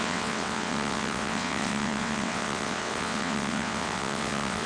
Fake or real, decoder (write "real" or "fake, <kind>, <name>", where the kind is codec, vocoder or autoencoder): fake, vocoder, WaveNeXt